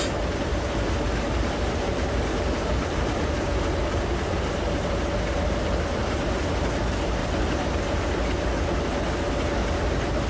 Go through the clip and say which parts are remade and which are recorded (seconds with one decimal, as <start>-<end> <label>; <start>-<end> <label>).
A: 0.0-0.5 recorded; 0.5-4.9 remade; 4.9-6.0 recorded; 6.0-6.6 remade; 6.6-7.2 recorded; 7.2-8.0 remade; 8.0-10.3 recorded